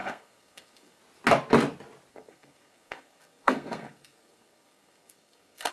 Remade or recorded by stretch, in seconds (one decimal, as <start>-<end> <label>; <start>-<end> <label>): 0.0-1.0 remade; 1.0-2.1 recorded; 2.1-5.7 remade